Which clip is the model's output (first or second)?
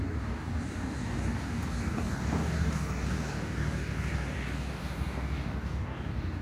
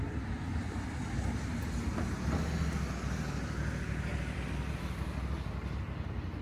first